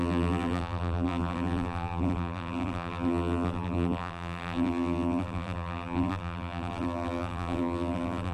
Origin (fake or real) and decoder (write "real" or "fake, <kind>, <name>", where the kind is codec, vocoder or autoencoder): fake, vocoder, BigVGAN v2